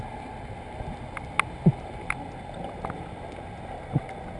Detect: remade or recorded recorded